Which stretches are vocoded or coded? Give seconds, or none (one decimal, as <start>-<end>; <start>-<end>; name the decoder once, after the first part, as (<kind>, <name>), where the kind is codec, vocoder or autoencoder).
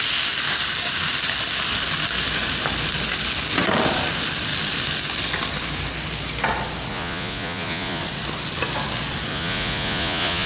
6.9-8.0 (vocoder, Vocos); 9.3-10.5